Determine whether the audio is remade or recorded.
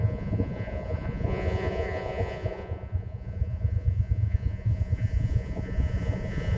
remade